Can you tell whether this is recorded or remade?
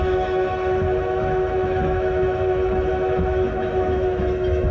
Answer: remade